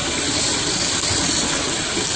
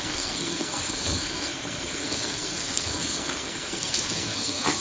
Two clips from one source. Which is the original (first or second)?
first